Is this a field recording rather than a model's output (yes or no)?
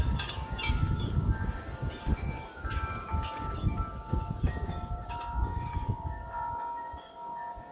no